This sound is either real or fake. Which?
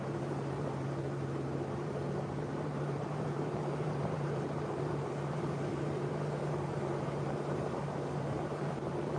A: fake